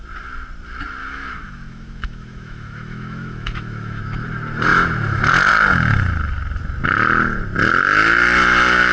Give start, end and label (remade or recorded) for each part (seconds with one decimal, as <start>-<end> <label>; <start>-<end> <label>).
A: 0.0-1.0 recorded; 1.0-4.0 remade; 4.0-8.9 recorded